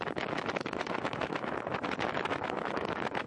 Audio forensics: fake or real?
fake